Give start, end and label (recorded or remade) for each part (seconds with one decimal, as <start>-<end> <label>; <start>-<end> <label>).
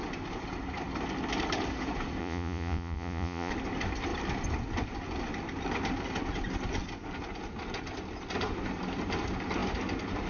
0.0-2.2 recorded; 2.2-3.5 remade; 3.5-10.3 recorded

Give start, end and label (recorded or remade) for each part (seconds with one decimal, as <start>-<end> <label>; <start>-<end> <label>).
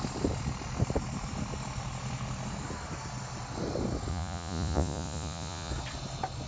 0.0-4.1 recorded; 4.1-5.7 remade; 5.7-6.5 recorded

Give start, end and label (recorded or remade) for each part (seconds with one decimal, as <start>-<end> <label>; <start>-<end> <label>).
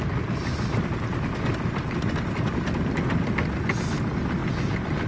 0.0-5.1 recorded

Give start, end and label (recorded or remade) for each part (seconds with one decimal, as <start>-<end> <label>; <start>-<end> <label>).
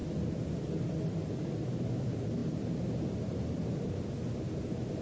0.0-1.7 remade; 1.7-2.4 recorded; 2.4-3.9 remade; 3.9-5.0 recorded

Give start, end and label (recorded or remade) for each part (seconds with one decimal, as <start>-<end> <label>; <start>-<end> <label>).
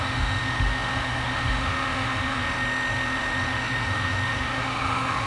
0.0-5.3 remade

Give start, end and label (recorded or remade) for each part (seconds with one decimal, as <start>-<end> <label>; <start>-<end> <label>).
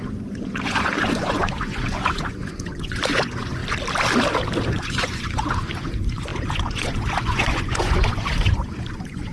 0.0-3.6 remade; 3.6-4.7 recorded; 4.7-9.3 remade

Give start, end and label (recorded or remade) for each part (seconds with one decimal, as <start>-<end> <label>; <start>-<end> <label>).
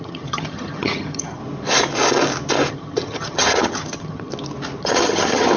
0.0-1.4 remade; 1.4-2.7 recorded; 2.7-4.3 remade; 4.3-4.8 recorded; 4.8-5.6 remade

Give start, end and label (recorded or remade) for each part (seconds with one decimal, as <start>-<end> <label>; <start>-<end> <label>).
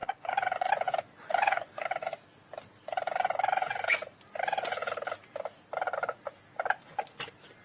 0.0-0.7 remade; 0.7-1.2 recorded; 1.2-1.8 remade; 1.8-7.6 recorded